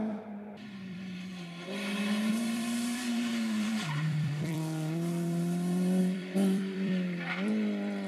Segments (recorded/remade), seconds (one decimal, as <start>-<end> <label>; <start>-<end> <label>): 0.0-1.3 remade; 1.3-2.3 recorded; 2.3-8.1 remade